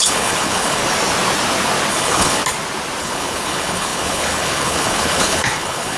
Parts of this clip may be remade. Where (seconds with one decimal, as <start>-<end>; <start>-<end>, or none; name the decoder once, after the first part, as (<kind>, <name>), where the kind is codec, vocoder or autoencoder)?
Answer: 0.0-0.8 (codec, HILCodec); 1.9-2.4; 3.0-6.0